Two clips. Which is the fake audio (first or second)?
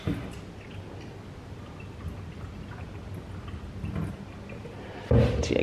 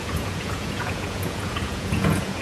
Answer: second